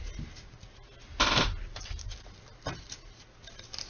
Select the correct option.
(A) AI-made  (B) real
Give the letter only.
B